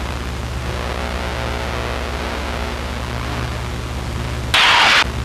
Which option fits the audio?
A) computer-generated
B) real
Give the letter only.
B